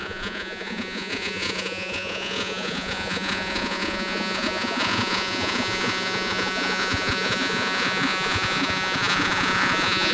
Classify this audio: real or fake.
fake